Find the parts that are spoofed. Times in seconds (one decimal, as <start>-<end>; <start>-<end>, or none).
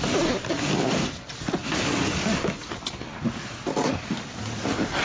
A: none